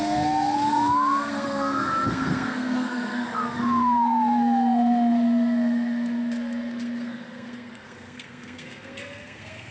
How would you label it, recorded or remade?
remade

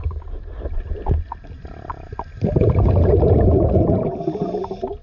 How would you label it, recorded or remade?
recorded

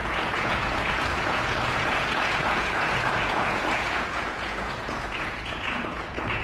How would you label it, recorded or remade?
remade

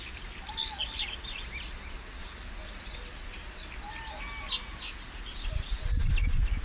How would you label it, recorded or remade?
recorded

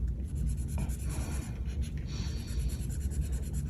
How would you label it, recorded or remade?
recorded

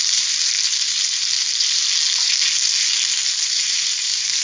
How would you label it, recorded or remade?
remade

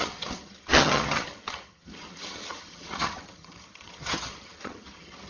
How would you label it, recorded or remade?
remade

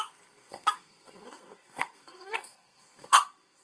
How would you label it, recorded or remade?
remade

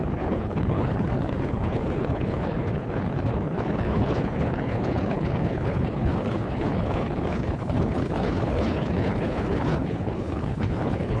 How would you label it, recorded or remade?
remade